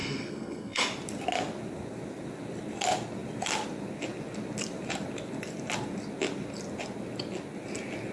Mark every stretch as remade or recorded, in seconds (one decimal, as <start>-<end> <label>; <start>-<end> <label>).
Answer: 0.0-0.8 remade; 0.8-8.1 recorded